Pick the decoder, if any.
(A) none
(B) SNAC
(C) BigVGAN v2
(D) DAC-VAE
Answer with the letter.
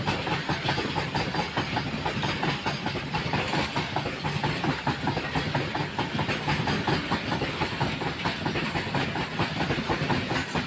A